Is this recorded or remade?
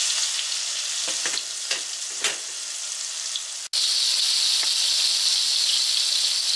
recorded